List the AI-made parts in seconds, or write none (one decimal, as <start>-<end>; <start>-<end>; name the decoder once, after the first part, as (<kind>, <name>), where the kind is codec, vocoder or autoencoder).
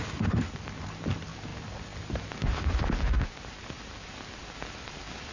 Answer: none